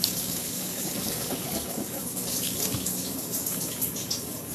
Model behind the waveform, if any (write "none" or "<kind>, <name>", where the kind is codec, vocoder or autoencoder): codec, DAC